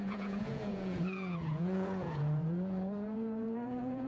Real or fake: fake